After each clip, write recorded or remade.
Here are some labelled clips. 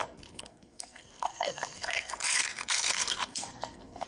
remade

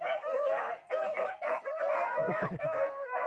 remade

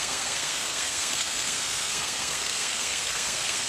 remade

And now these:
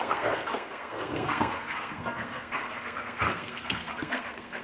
remade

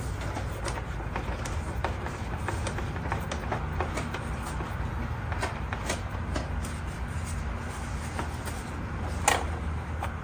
recorded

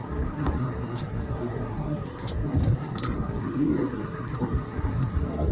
remade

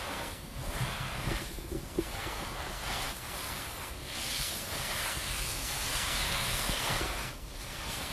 remade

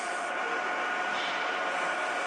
recorded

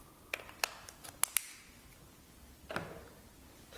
recorded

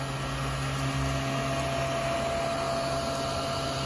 recorded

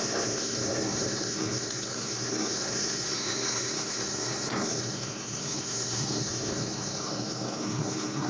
remade